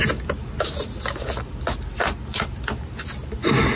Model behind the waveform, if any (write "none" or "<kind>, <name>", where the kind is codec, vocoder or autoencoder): none